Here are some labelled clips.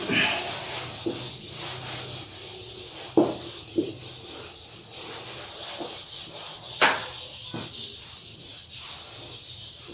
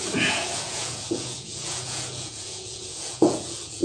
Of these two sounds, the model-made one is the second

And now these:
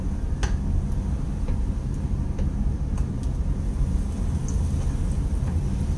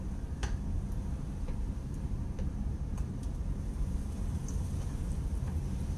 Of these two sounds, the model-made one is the second